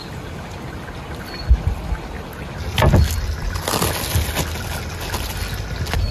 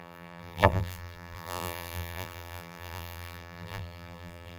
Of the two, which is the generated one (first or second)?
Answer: second